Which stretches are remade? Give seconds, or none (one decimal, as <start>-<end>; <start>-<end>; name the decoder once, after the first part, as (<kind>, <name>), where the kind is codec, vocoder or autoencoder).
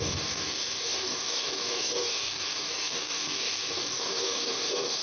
0.0-5.0 (codec, DAC)